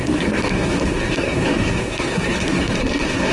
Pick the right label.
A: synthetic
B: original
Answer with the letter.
A